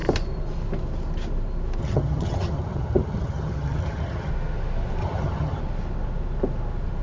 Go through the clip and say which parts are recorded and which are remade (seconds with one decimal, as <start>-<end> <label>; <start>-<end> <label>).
0.0-1.8 recorded; 1.8-4.3 remade; 4.3-5.0 recorded; 5.0-5.6 remade; 5.6-7.0 recorded